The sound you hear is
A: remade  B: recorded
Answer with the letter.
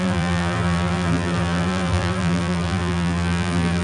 A